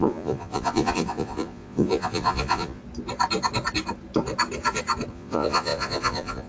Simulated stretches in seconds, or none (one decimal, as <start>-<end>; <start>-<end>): 0.0-2.8; 5.1-6.5